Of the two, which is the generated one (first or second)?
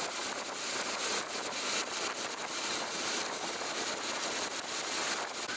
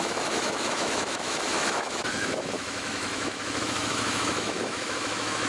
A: second